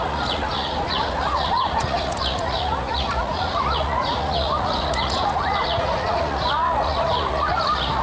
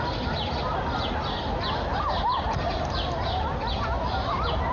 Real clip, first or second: second